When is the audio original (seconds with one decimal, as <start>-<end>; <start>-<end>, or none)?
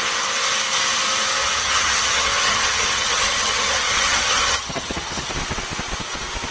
0.0-1.4; 5.3-6.5